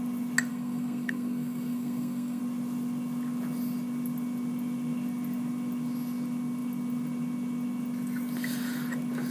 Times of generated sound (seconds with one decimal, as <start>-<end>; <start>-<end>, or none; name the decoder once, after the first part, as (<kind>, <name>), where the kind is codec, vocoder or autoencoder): 0.5-2.4 (codec, SNAC)